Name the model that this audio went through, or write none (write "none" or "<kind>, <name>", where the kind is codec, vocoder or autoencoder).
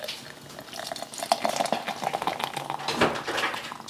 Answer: none